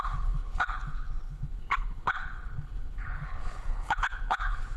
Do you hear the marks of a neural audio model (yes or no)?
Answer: yes